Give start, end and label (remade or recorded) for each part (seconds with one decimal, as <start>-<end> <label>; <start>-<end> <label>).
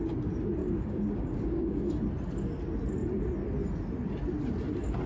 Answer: 0.0-0.6 recorded; 0.6-1.8 remade; 1.8-5.1 recorded